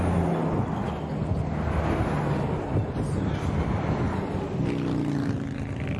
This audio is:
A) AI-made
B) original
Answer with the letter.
B